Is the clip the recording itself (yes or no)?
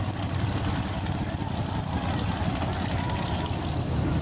yes